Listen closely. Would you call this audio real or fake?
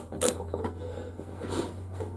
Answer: fake